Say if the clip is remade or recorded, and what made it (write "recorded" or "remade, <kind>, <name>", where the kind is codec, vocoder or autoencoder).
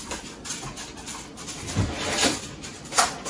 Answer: recorded